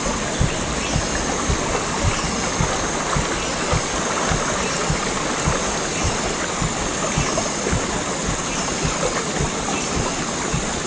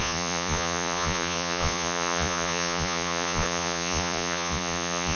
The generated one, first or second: second